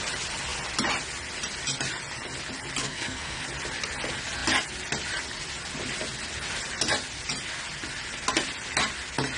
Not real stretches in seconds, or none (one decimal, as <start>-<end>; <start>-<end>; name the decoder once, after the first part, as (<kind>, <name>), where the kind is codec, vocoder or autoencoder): 2.8-3.4 (codec, SNAC)